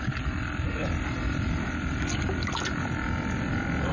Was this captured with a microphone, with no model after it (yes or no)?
yes